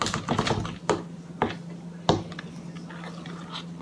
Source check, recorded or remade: recorded